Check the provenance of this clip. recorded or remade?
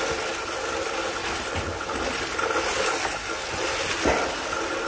recorded